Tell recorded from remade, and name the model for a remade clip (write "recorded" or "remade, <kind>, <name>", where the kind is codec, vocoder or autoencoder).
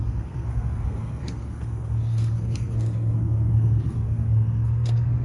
remade, codec, SNAC